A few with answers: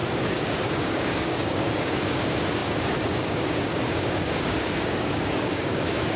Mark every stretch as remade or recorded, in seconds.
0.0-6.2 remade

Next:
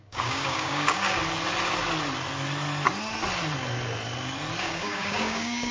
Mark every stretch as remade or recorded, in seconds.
0.0-1.2 remade; 1.2-4.6 recorded; 4.6-5.7 remade

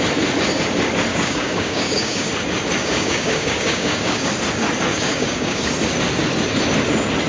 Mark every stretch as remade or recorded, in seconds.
0.0-1.1 recorded; 1.1-2.3 remade; 2.3-2.8 recorded; 2.8-4.3 remade; 4.3-4.9 recorded; 4.9-5.6 remade; 5.6-7.3 recorded